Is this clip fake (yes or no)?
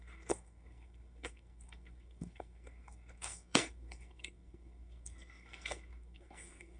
yes